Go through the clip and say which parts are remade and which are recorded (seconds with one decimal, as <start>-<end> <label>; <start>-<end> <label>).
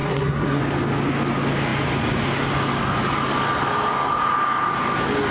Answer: 0.0-0.6 remade; 0.6-5.3 recorded